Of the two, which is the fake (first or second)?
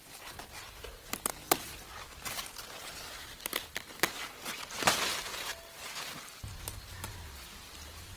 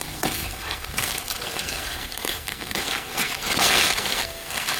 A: second